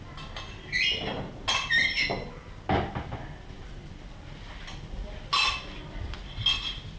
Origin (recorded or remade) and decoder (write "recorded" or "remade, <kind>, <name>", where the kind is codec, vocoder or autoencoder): recorded